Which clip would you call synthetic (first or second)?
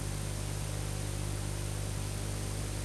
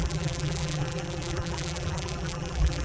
second